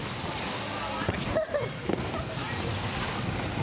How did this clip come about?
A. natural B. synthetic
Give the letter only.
A